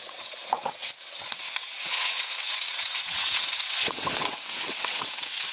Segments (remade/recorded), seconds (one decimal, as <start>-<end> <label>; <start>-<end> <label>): 0.0-5.5 remade